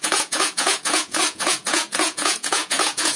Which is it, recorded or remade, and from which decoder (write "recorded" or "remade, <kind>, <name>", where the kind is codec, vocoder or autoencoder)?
remade, vocoder, Vocos